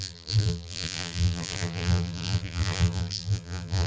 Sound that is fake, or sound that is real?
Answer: fake